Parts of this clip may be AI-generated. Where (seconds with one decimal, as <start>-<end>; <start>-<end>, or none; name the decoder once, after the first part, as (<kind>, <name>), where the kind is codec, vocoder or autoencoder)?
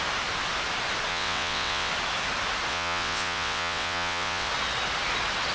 1.1-1.9 (vocoder, WaveNeXt); 2.7-4.5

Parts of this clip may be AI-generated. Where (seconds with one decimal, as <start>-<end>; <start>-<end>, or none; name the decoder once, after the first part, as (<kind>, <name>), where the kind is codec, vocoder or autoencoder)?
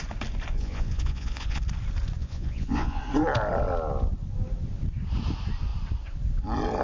0.5-1.6 (vocoder, Vocos); 2.2-3.0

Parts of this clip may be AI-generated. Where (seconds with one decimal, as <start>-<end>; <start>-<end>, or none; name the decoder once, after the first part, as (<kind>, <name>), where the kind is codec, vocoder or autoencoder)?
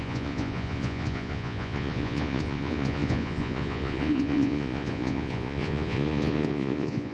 0.0-7.1 (vocoder, Vocos)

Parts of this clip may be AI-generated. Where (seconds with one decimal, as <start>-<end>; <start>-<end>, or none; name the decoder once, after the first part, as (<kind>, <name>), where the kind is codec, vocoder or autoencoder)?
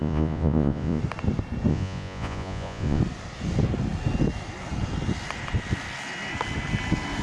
0.0-1.0 (vocoder, Vocos); 1.7-3.0